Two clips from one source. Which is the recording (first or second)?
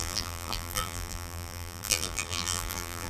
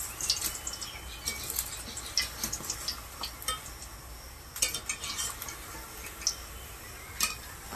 second